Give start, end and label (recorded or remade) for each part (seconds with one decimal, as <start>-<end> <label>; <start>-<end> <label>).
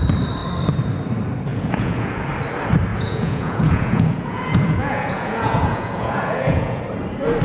0.0-1.5 recorded; 1.5-2.3 remade; 2.3-2.9 recorded; 2.9-6.8 remade; 6.8-7.4 recorded